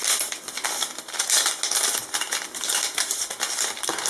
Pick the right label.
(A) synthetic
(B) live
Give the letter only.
B